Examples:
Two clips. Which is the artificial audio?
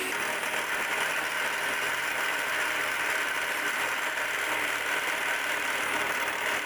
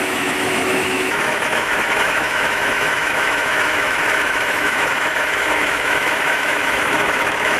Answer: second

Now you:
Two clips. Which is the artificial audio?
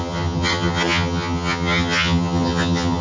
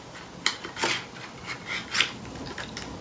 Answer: first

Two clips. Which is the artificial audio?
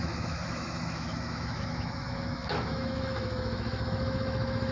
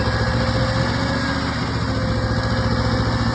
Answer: first